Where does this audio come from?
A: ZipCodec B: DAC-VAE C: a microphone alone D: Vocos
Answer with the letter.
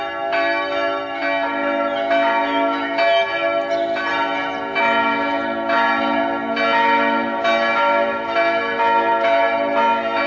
C